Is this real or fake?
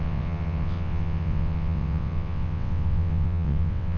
fake